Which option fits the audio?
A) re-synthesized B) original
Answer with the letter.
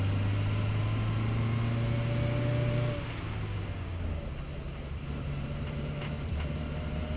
B